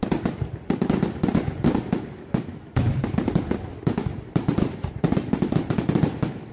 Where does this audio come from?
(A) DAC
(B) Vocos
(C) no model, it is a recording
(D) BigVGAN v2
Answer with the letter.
D